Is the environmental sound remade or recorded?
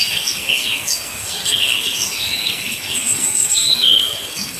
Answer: remade